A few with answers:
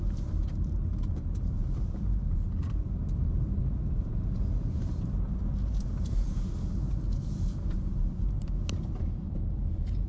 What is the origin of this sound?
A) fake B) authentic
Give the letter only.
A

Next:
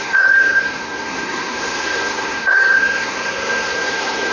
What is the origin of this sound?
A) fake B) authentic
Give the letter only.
A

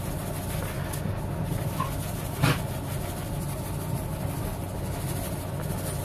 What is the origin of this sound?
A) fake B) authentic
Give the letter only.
B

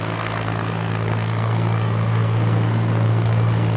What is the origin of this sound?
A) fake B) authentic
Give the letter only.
A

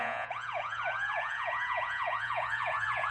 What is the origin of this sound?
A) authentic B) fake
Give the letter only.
B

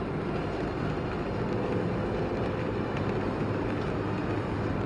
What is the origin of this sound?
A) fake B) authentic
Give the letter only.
B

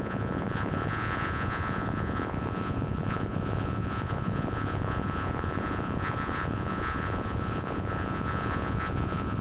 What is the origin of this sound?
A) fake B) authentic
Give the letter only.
A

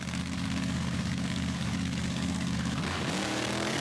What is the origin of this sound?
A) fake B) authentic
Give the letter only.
A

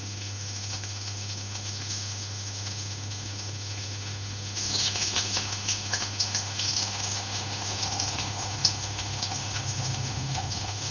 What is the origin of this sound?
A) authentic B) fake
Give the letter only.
B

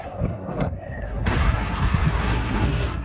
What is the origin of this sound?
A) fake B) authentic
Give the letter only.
A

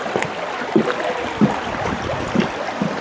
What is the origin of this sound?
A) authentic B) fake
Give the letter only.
A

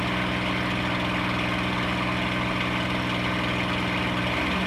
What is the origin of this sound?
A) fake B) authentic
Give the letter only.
B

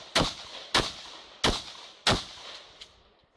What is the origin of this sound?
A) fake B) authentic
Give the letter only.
B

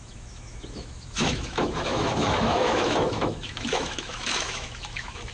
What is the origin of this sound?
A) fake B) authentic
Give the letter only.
A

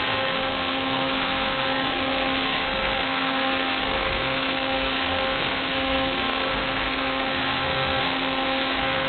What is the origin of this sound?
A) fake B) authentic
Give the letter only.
A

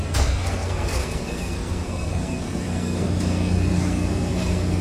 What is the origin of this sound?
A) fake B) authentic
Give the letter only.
A